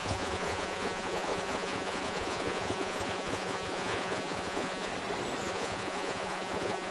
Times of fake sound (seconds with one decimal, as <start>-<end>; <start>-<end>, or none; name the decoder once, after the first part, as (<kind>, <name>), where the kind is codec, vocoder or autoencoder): 0.0-4.9 (vocoder, Vocos); 5.4-6.9